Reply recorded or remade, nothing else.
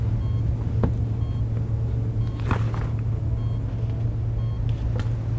recorded